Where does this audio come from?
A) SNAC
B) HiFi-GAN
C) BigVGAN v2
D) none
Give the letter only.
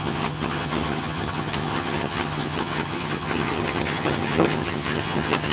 B